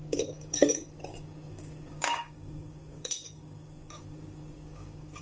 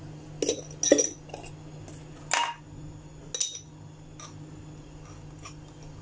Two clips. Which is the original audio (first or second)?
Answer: second